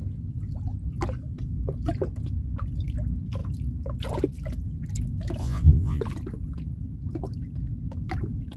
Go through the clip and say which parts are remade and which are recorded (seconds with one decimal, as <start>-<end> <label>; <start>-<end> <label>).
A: 0.0-5.4 recorded; 5.4-6.0 remade; 6.0-8.6 recorded